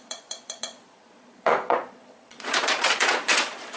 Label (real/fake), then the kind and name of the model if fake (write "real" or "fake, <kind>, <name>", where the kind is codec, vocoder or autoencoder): fake, vocoder, Vocos